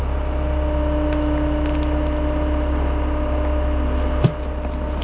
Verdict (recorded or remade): recorded